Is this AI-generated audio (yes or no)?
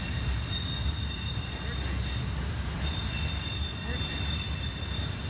no